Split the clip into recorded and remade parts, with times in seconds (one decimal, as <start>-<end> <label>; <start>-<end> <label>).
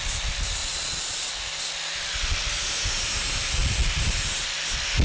0.0-0.6 recorded; 0.6-1.3 remade; 1.3-5.0 recorded